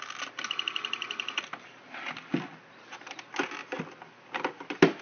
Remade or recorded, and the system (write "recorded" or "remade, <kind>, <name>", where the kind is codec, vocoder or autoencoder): recorded